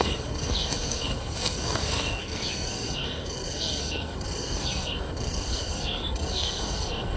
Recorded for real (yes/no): no